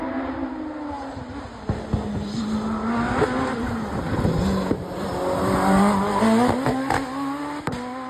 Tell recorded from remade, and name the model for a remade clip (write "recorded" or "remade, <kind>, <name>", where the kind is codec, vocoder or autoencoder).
recorded